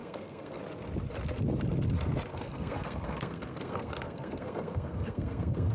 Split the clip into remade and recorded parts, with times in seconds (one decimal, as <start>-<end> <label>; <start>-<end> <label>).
0.0-0.6 remade; 0.6-2.3 recorded; 2.3-5.7 remade

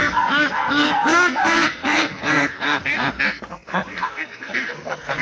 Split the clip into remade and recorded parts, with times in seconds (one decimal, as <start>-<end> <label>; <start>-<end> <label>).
0.0-5.2 remade

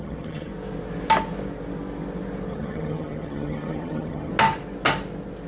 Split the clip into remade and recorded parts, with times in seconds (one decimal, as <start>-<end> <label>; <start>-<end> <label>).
0.0-0.5 remade; 0.5-2.5 recorded; 2.5-4.3 remade; 4.3-5.5 recorded

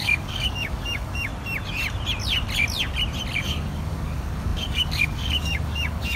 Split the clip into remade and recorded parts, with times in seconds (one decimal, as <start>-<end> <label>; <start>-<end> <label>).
0.0-1.3 remade; 1.3-3.4 recorded; 3.4-6.2 remade